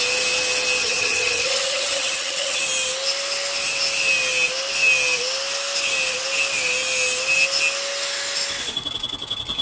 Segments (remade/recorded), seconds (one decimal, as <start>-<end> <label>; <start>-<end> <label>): 0.0-0.8 recorded; 0.8-2.6 remade; 2.6-9.6 recorded